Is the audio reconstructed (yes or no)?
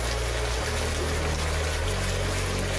no